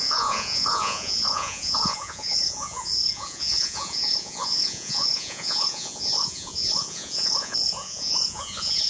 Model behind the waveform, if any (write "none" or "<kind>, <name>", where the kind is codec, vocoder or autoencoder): vocoder, Vocos